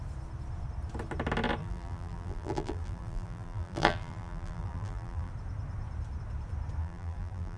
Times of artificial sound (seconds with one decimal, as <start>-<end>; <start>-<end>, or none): 1.6-5.3; 6.8-7.6